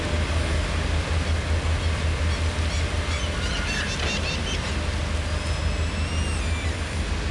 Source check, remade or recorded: recorded